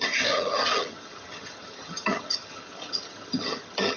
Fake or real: fake